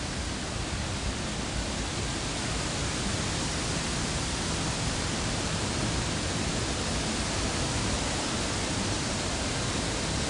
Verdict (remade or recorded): recorded